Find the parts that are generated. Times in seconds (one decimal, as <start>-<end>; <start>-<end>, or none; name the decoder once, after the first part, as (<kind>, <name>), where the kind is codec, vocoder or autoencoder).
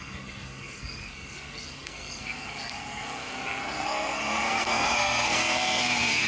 0.0-6.3 (codec, SNAC)